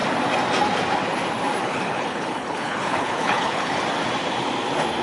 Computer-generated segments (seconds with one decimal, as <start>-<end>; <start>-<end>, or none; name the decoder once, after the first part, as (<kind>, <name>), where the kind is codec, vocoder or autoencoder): 1.6-3.8 (codec, HILCodec)